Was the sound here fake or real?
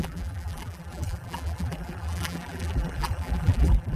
fake